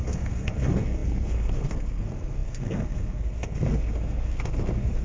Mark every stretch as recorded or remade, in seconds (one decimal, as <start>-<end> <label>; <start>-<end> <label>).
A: 0.0-5.0 remade